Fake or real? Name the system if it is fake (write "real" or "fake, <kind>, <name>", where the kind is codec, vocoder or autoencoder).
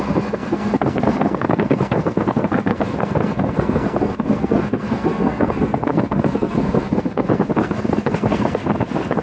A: fake, codec, SNAC